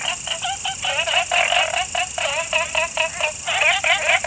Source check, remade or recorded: recorded